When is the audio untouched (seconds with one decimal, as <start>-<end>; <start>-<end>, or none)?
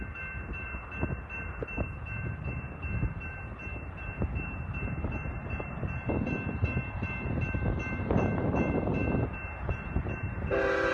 9.0-9.6